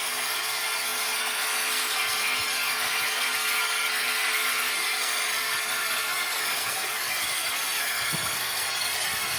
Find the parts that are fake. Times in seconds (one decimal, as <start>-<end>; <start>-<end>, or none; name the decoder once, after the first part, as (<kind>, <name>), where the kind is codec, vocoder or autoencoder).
0.0-9.4 (codec, SNAC)